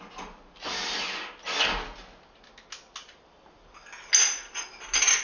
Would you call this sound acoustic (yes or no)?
yes